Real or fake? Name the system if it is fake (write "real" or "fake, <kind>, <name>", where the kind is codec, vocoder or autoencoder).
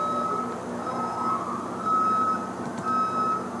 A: real